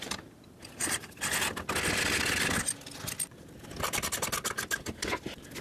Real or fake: real